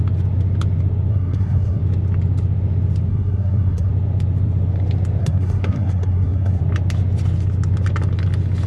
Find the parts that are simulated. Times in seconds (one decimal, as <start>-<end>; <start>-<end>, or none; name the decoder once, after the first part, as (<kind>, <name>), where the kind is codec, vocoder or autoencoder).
1.1-1.8 (codec, SNAC); 3.1-3.9; 5.2-6.6